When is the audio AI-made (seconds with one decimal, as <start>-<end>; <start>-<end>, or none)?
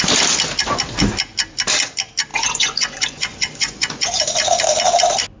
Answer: 2.3-4.2